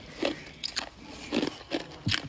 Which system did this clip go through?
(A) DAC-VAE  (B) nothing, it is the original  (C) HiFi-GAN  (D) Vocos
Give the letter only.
B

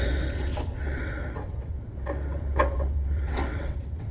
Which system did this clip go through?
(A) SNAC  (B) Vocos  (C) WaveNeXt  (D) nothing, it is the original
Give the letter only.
C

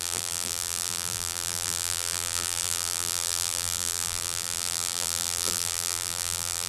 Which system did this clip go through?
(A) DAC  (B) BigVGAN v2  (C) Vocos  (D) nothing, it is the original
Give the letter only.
B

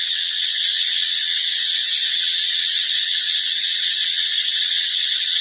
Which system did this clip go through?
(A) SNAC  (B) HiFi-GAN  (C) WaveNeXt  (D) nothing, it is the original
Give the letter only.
C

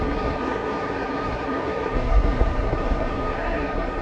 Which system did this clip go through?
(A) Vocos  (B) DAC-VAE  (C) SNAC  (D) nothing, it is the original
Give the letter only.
C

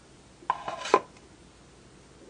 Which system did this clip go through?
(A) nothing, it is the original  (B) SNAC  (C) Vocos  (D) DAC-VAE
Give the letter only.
A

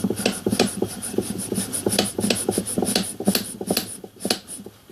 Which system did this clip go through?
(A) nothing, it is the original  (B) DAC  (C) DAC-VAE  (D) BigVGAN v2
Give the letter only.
A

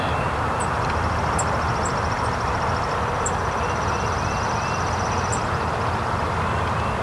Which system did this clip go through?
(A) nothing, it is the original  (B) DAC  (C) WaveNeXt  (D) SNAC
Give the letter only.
A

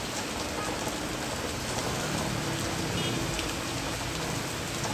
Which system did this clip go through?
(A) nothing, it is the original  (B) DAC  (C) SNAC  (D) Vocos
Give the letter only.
A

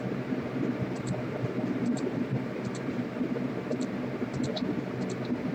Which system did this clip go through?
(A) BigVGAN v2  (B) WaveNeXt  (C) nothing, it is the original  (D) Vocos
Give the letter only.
A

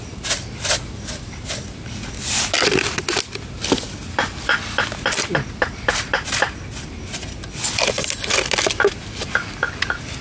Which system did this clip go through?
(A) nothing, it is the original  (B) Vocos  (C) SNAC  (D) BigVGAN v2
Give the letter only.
A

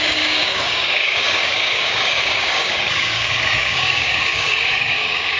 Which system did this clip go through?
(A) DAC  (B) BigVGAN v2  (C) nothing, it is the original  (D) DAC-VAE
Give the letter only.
A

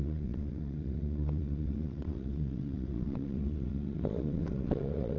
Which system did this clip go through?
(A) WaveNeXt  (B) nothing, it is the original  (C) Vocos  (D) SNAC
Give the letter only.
A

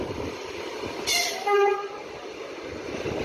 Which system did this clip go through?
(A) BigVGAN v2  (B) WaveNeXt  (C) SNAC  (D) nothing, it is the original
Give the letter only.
A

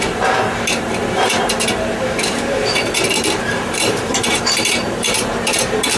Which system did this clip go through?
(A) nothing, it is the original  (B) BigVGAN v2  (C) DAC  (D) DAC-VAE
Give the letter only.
B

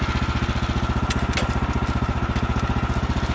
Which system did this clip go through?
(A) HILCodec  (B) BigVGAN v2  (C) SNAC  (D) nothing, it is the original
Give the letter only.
D